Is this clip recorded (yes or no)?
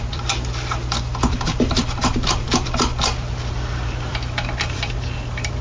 no